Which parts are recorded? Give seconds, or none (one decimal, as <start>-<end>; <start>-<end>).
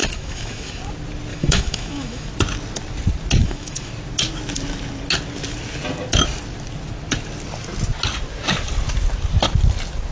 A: 0.8-1.3; 2.3-3.4; 3.9-10.1